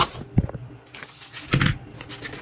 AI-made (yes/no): no